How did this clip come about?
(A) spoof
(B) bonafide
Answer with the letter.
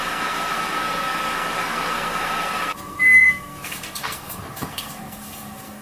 A